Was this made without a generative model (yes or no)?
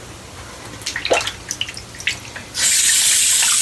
yes